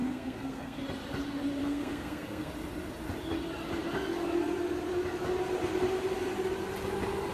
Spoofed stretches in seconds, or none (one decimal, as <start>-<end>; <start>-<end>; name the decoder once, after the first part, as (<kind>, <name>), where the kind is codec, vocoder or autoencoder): 0.0-0.8 (codec, SNAC); 1.6-2.5